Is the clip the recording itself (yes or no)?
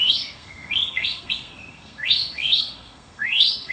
no